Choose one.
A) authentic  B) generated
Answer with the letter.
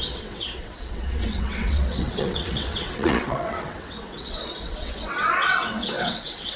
B